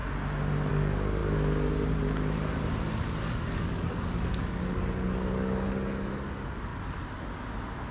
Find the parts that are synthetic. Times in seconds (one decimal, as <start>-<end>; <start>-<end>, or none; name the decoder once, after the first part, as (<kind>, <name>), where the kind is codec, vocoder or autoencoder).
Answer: 0.7-1.2 (codec, DAC); 3.2-6.7